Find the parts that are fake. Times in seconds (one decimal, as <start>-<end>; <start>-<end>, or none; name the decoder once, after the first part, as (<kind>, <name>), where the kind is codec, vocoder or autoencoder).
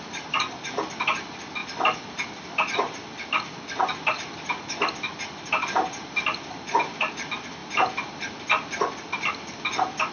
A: none